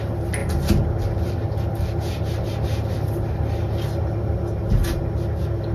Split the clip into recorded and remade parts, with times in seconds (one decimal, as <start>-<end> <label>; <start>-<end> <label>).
0.0-5.7 recorded

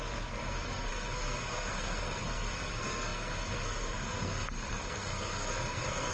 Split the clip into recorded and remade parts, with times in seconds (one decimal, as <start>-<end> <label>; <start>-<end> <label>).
0.0-6.1 remade